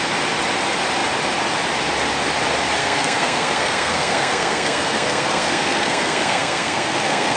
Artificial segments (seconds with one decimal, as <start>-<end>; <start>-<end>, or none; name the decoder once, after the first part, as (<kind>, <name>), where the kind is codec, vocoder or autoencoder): 2.8-7.4 (codec, SNAC)